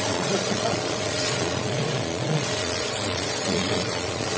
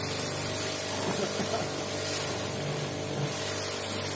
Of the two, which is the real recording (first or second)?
second